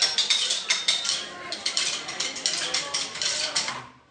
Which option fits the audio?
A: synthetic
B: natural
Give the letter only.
B